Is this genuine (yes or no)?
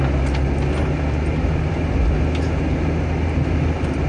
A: yes